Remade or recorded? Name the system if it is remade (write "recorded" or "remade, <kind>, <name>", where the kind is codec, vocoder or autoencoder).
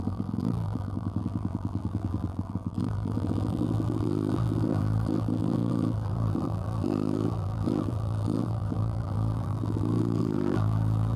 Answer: remade, vocoder, BigVGAN v2